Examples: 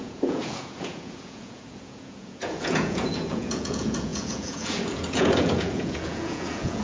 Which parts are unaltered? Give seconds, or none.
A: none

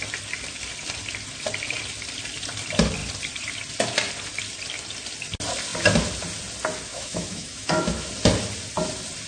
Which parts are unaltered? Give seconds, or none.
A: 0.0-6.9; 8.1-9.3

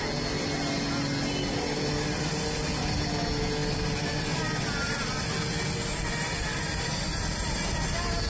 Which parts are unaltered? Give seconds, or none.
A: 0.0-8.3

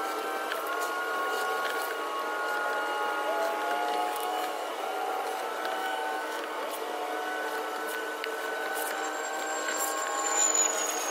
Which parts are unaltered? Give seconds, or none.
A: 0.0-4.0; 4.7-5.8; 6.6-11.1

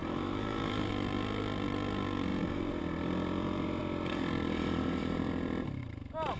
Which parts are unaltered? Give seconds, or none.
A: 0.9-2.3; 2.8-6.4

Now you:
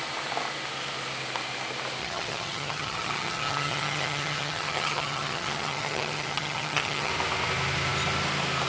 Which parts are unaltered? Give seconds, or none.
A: 0.0-2.0; 7.1-8.7